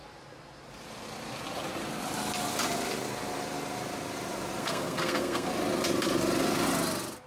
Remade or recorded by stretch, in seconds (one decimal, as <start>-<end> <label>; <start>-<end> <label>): 0.0-4.6 recorded; 4.6-5.5 remade; 5.5-7.3 recorded